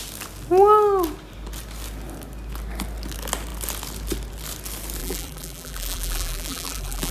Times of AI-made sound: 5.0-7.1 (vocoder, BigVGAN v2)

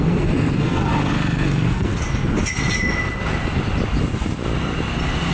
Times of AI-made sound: 0.0-1.9 (codec, SNAC)

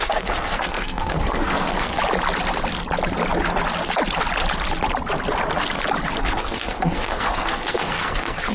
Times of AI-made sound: 0.0-1.9 (codec, SNAC); 6.2-8.5

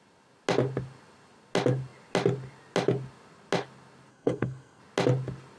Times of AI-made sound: 4.1-4.8 (codec, SNAC)